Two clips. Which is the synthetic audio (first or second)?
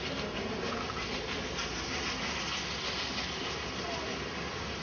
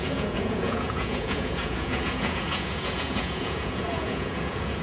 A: second